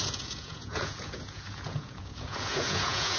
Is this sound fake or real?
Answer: fake